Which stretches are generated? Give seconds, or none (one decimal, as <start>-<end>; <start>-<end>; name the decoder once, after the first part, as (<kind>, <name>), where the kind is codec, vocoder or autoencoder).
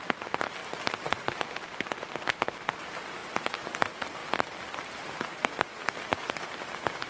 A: 0.0-0.6 (vocoder, BigVGAN v2); 2.1-5.4; 6.0-7.1